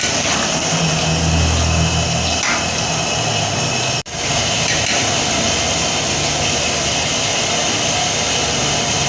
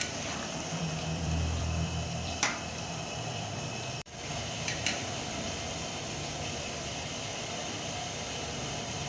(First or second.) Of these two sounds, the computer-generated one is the second